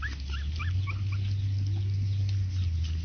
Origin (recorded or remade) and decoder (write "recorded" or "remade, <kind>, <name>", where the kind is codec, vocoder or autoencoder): recorded